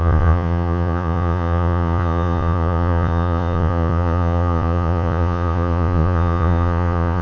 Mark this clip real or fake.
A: fake